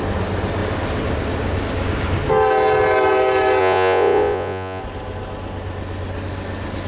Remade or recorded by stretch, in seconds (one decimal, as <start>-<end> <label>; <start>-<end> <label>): 0.0-3.6 recorded; 3.6-4.8 remade; 4.8-6.9 recorded